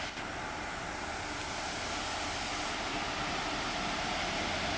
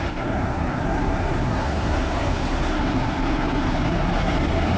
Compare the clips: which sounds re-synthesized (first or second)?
second